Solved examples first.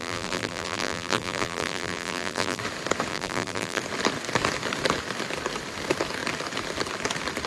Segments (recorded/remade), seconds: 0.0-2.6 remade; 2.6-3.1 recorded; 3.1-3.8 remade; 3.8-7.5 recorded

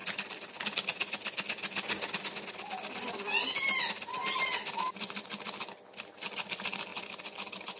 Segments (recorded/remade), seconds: 0.0-7.8 recorded

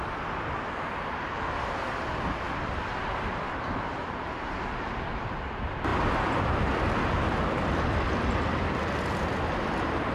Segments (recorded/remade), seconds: 0.0-10.1 recorded

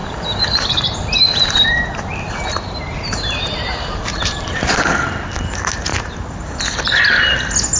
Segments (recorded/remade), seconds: 0.0-4.7 remade; 4.7-5.9 recorded; 5.9-6.9 remade; 6.9-7.8 recorded

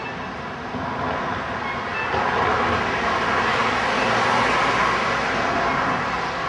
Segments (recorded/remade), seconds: 0.0-6.5 recorded

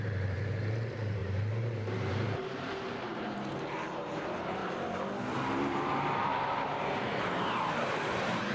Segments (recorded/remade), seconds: 0.0-4.6 remade; 4.6-5.6 recorded; 5.6-8.5 remade

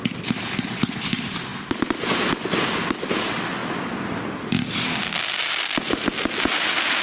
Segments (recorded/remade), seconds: 0.0-7.0 recorded